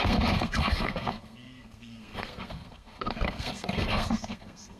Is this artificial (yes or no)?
yes